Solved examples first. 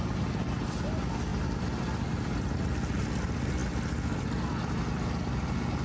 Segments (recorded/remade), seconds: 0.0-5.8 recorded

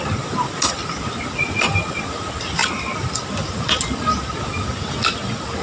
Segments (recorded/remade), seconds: 0.0-5.6 recorded

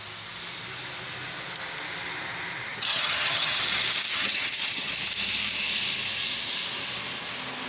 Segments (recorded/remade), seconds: 0.0-2.7 recorded; 2.7-3.6 remade; 3.6-4.1 recorded; 4.1-4.9 remade; 4.9-7.7 recorded

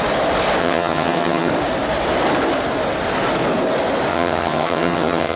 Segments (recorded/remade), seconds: 0.0-0.6 recorded; 0.6-1.5 remade; 1.5-4.1 recorded; 4.1-5.4 remade

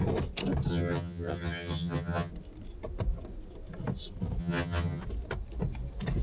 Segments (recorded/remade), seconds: 0.0-0.7 recorded; 0.7-2.3 remade; 2.3-4.4 recorded; 4.4-5.0 remade; 5.0-6.2 recorded

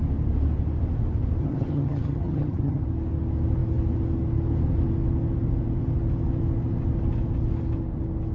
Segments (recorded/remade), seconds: 0.0-1.4 recorded; 1.4-2.8 remade; 2.8-8.3 recorded

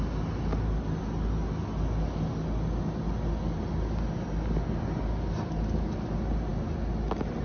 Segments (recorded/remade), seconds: 0.0-7.4 recorded

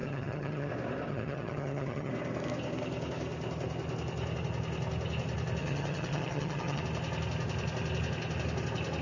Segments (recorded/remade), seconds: 0.0-0.7 remade; 0.7-1.1 recorded; 1.1-2.1 remade; 2.1-5.6 recorded; 5.6-6.8 remade; 6.8-9.0 recorded